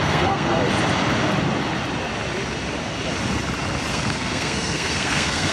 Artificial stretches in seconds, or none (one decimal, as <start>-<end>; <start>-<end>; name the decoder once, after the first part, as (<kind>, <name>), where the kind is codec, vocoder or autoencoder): 0.0-0.6 (codec, SNAC); 3.9-5.5